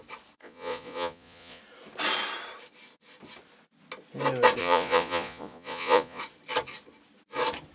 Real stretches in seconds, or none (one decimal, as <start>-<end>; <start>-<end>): 0.0-0.4; 1.6-4.6; 6.2-7.7